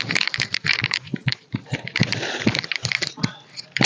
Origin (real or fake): fake